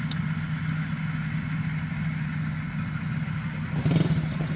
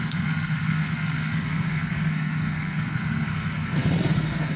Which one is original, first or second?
first